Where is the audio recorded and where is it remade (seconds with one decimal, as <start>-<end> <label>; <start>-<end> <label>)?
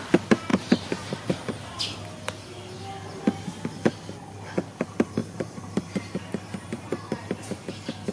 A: 0.0-0.5 recorded; 0.5-1.8 remade; 1.8-5.2 recorded; 5.2-7.6 remade; 7.6-8.1 recorded